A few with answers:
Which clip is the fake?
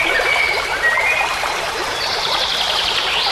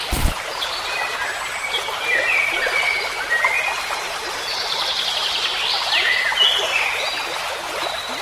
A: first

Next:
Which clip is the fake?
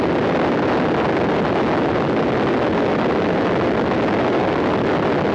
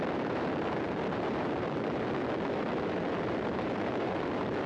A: second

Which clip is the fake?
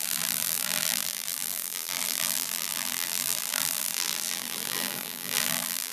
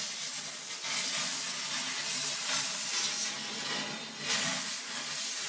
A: first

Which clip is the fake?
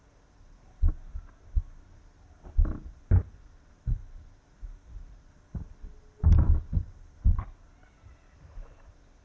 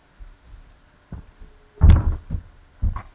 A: first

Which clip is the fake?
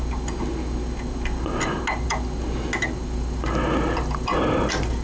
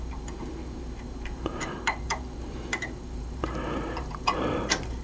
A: second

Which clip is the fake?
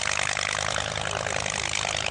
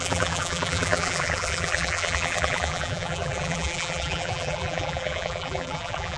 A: second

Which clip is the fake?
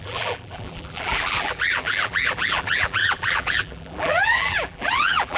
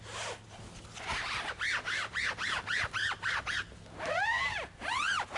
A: first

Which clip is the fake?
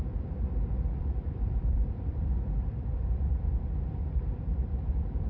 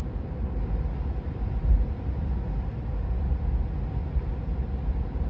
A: first